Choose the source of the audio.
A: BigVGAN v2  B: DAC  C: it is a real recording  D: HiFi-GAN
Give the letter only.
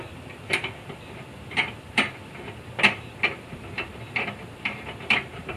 A